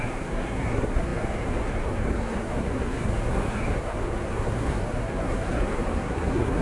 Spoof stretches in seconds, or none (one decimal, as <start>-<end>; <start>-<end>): 0.0-6.6